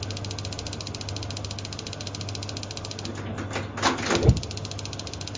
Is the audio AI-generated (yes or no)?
no